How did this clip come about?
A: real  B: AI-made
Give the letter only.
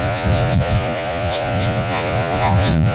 B